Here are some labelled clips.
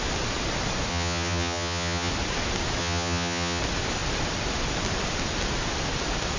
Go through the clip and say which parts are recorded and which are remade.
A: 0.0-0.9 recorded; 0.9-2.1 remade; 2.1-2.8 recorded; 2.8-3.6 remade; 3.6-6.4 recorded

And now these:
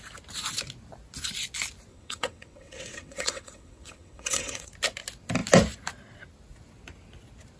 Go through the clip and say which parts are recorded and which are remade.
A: 0.0-1.9 recorded; 1.9-4.7 remade; 4.7-7.6 recorded